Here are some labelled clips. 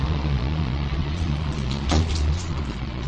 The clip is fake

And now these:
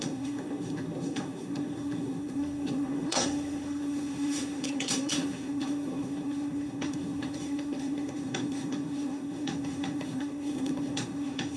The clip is fake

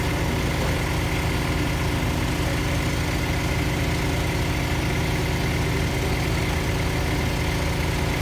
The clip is real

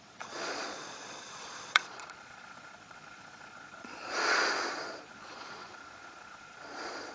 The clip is fake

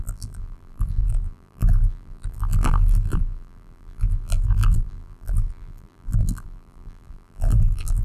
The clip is fake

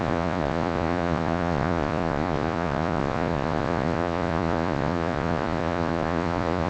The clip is fake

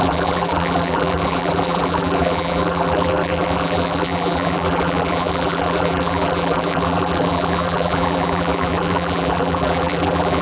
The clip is fake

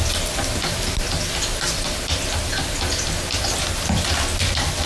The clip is real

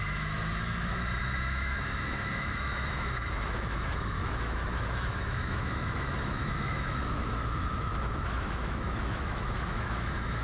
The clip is fake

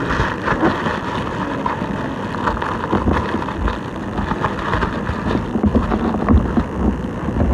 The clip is real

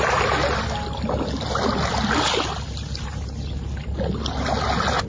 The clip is real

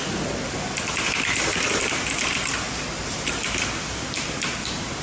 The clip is real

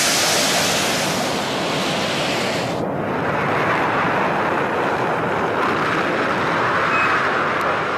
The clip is real